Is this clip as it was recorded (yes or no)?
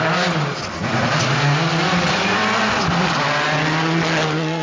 yes